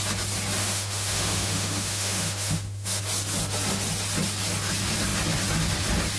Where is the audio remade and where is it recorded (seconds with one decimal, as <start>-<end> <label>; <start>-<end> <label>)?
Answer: 0.0-0.6 recorded; 0.6-3.0 remade; 3.0-6.2 recorded